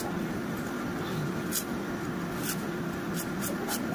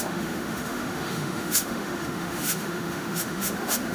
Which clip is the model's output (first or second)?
second